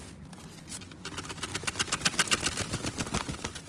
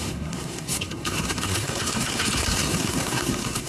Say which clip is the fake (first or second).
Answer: second